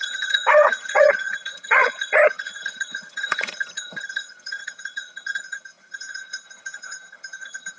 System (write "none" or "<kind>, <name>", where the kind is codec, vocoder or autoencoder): vocoder, HiFi-GAN